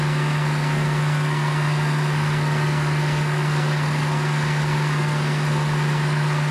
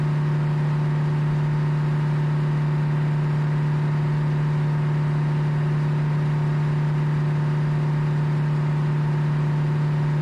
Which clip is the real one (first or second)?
second